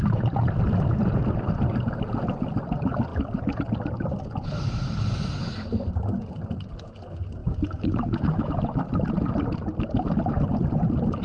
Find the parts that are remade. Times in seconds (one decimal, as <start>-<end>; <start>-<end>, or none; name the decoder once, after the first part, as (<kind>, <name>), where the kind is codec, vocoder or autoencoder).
7.4-8.5 (autoencoder, DAC-VAE)